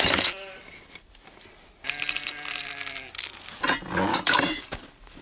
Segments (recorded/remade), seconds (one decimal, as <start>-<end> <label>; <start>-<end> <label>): 0.0-4.1 recorded; 4.1-4.8 remade; 4.8-5.2 recorded